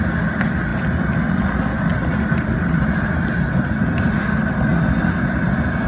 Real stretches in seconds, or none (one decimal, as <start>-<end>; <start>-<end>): 0.0-1.9; 3.7-5.9